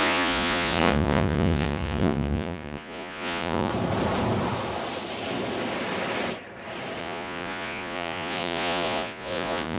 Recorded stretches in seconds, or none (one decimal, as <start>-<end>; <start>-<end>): 3.7-7.0